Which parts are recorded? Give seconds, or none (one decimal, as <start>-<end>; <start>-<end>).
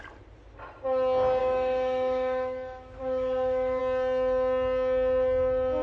0.0-1.4; 3.8-5.8